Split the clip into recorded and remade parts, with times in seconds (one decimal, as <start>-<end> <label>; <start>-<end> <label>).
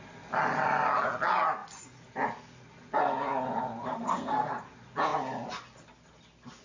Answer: 0.0-3.9 recorded; 3.9-4.6 remade; 4.6-6.6 recorded